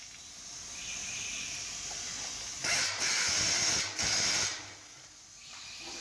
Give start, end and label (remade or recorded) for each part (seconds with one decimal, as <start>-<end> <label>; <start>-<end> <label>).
0.0-6.0 recorded